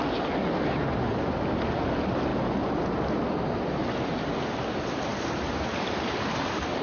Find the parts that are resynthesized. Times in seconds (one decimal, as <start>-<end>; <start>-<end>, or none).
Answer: none